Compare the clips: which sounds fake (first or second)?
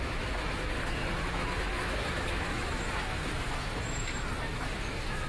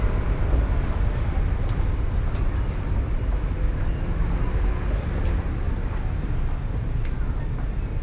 first